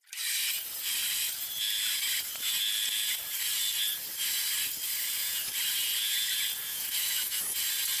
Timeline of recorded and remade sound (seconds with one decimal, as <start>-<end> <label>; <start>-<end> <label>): 0.0-6.7 recorded; 6.7-7.4 remade; 7.4-8.0 recorded

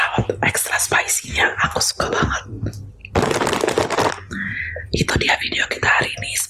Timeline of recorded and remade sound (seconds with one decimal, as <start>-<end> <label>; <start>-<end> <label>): 0.0-6.5 recorded